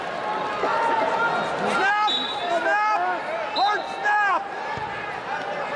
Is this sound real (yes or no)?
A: yes